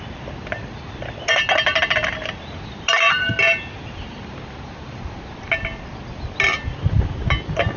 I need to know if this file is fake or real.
real